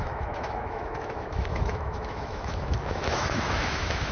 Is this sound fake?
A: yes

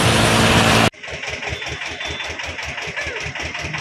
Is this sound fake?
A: no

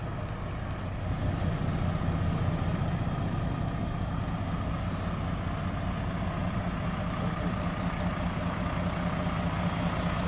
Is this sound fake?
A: no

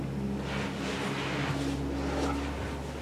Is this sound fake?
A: no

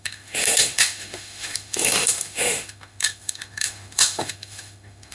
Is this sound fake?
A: yes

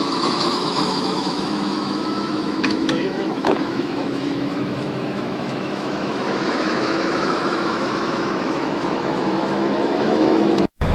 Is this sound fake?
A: yes